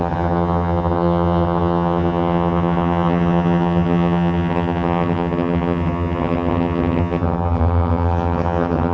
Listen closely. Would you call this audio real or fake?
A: fake